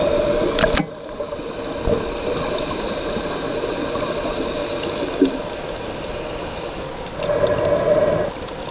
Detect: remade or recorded recorded